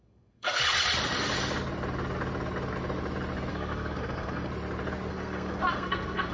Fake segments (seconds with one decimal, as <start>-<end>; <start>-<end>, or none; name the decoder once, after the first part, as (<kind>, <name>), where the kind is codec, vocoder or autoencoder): 0.0-0.6 (codec, SNAC); 3.5-4.5; 5.1-6.3